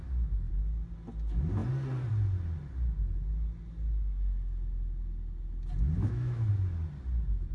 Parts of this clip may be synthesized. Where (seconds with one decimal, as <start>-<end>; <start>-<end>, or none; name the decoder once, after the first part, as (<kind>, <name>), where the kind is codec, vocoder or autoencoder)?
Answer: 6.0-6.5 (autoencoder, DAC-VAE)